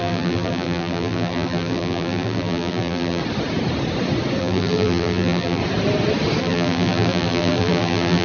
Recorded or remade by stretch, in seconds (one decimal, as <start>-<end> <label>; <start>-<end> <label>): 0.0-3.2 remade; 3.2-4.4 recorded; 4.4-5.6 remade; 5.6-6.4 recorded; 6.4-8.2 remade